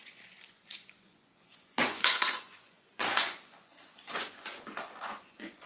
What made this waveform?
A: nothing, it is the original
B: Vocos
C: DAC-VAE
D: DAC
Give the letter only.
B